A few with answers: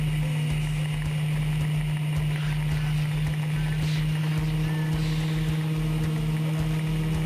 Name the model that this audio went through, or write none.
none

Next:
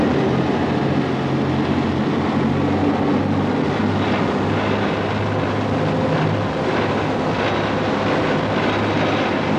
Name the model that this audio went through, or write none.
none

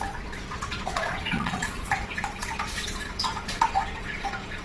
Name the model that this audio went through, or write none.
vocoder, Vocos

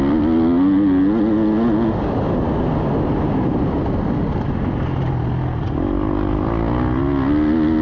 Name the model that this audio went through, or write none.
none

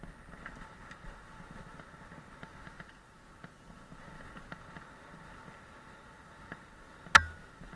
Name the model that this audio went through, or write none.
none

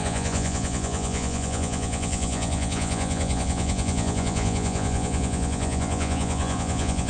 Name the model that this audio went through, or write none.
vocoder, Vocos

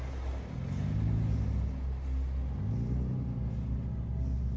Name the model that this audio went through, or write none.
none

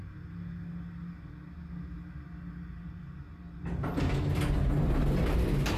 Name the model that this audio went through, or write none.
none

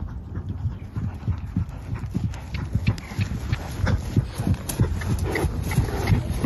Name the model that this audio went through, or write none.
none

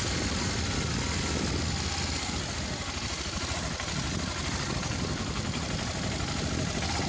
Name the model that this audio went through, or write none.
none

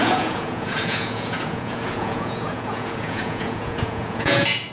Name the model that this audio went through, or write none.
vocoder, Vocos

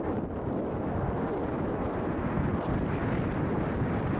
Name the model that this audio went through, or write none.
none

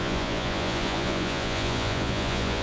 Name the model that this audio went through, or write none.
vocoder, Vocos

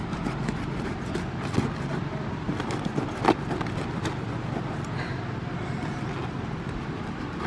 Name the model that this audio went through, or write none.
none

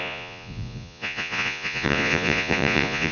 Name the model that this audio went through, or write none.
vocoder, Vocos